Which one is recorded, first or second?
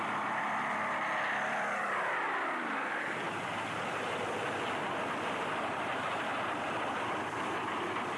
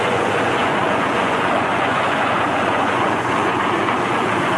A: first